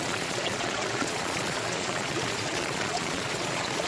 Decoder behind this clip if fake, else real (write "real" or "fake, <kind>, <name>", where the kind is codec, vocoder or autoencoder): fake, vocoder, Vocos